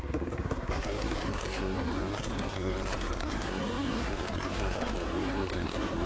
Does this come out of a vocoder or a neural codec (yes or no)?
yes